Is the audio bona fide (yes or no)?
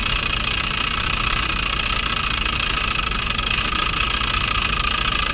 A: yes